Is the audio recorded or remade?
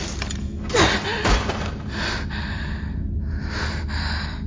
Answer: recorded